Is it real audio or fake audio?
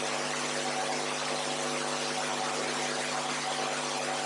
real